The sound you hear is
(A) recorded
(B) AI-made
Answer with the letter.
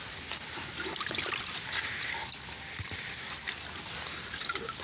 A